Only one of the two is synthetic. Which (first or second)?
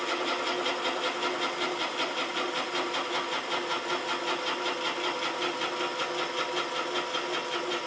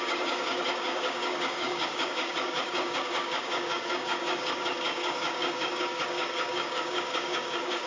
second